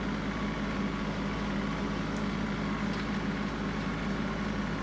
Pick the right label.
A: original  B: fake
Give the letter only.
A